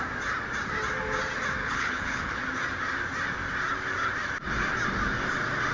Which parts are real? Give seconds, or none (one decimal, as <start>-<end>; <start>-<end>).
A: 0.0-1.6; 2.4-5.7